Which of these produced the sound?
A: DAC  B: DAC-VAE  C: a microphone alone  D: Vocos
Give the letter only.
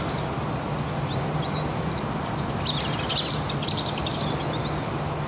C